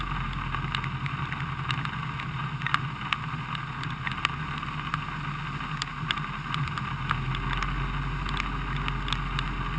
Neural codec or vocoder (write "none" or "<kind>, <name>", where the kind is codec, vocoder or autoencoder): none